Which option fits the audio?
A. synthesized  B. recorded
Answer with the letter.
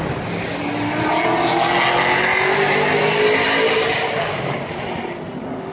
B